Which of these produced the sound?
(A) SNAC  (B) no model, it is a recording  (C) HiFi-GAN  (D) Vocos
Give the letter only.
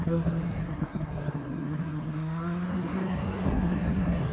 A